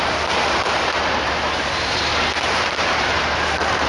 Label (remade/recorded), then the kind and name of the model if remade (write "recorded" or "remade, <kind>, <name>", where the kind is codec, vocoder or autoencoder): remade, vocoder, BigVGAN v2